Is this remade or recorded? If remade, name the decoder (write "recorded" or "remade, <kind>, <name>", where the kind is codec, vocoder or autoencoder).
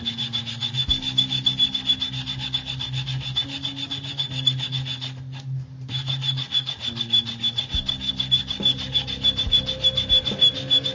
recorded